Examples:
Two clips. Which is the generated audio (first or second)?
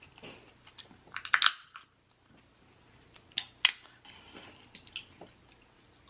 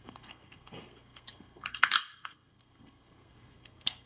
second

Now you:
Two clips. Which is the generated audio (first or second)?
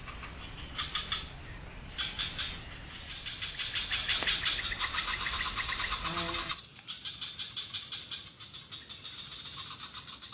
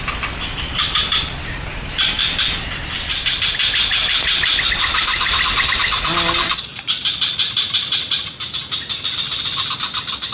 second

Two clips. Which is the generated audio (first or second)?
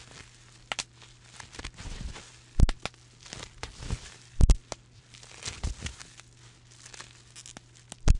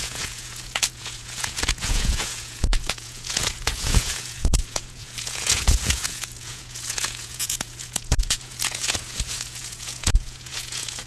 second